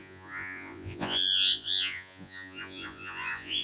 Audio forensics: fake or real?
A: fake